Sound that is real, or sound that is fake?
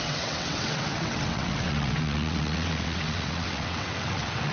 fake